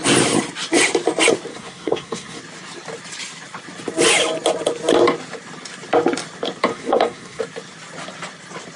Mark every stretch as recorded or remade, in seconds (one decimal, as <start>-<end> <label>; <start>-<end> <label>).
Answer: 0.0-1.5 recorded; 1.5-2.4 remade; 2.4-6.7 recorded; 6.7-7.4 remade; 7.4-8.8 recorded

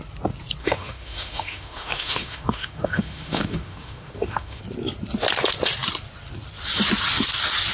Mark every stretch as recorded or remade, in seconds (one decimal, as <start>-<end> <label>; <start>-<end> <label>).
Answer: 0.0-0.6 recorded; 0.6-4.6 remade; 4.6-7.7 recorded

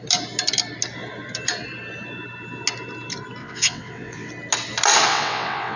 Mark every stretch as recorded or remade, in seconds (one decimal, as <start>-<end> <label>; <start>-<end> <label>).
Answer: 0.0-3.4 recorded; 3.4-4.3 remade; 4.3-5.1 recorded; 5.1-5.8 remade

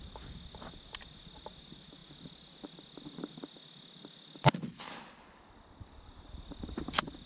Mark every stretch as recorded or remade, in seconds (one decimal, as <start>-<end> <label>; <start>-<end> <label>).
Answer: 0.0-7.3 recorded

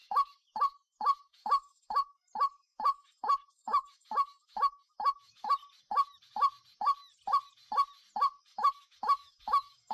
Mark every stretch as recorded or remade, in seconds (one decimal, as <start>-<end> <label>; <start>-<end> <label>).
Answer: 0.0-5.6 remade; 5.6-8.4 recorded; 8.4-9.9 remade